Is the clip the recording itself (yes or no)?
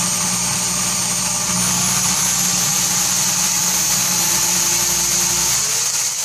yes